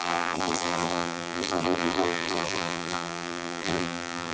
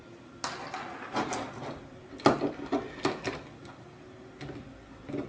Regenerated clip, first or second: first